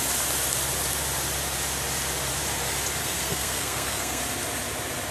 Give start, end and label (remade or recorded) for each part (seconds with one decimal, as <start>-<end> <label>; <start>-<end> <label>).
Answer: 0.0-3.0 recorded; 3.0-4.2 remade; 4.2-5.1 recorded